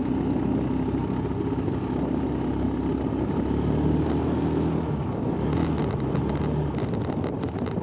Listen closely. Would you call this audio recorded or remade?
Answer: recorded